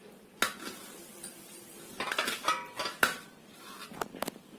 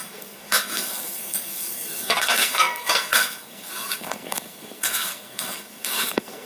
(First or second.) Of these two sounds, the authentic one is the first